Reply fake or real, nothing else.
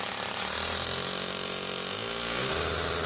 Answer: real